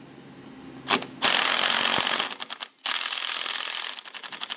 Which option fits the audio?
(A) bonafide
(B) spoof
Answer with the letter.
A